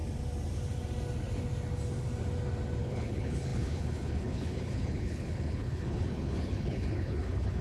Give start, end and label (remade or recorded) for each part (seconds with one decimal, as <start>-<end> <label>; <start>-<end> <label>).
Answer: 0.0-2.8 recorded; 2.8-7.6 remade